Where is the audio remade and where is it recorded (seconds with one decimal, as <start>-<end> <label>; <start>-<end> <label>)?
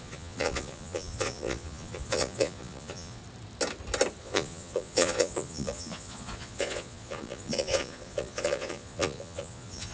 0.0-3.2 remade; 3.2-4.2 recorded; 4.2-9.9 remade